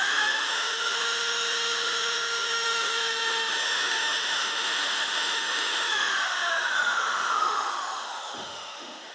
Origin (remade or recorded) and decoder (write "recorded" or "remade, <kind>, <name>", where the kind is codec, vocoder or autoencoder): remade, autoencoder, DAC-VAE